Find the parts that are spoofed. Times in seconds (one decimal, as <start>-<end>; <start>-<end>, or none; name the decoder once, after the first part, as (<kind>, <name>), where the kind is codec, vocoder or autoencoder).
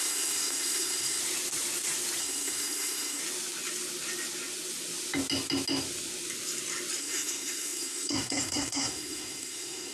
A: 0.0-1.2 (codec, SNAC); 2.2-3.2; 7.0-9.9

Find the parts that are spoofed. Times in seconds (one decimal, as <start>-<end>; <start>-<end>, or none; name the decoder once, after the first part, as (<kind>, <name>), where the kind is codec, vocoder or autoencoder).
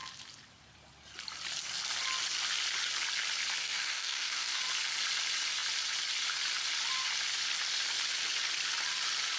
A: 3.6-4.6 (codec, DAC)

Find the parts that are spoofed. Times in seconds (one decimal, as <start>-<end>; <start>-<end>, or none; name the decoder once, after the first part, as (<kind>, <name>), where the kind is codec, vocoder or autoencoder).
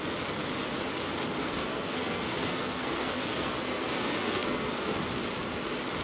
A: 1.4-5.0 (codec, SNAC)